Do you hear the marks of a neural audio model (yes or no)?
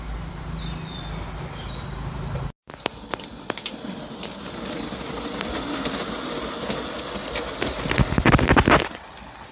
no